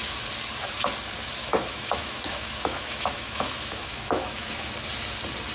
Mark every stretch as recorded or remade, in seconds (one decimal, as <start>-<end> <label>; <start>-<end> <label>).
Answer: 0.0-1.4 recorded; 1.4-4.7 remade; 4.7-5.5 recorded